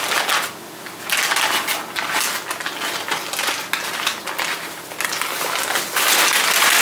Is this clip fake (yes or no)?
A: no